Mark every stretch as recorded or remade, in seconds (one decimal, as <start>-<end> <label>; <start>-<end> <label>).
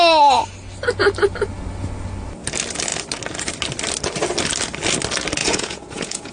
0.0-5.4 recorded; 5.4-6.3 remade